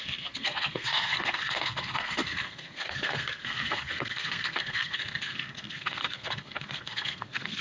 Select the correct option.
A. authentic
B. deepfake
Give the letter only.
B